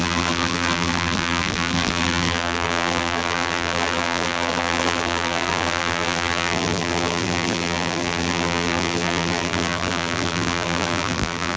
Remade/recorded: remade